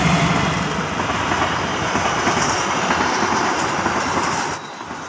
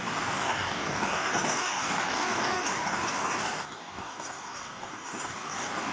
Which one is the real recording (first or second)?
first